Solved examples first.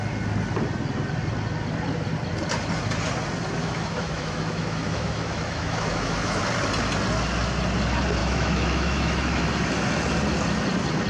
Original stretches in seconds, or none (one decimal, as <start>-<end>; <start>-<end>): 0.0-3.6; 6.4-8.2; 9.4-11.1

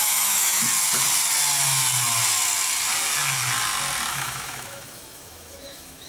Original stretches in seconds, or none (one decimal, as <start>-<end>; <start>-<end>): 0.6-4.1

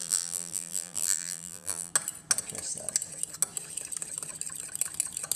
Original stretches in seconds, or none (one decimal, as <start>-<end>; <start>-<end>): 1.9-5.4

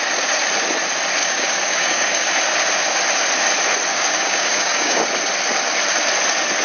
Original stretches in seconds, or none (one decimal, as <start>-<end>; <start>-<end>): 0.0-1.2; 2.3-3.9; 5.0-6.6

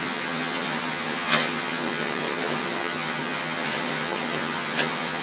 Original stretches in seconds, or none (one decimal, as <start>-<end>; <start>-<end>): none